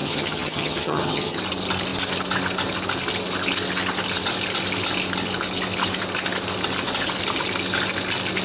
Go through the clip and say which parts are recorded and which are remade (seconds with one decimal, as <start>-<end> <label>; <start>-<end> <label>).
0.0-1.4 remade; 1.4-8.4 recorded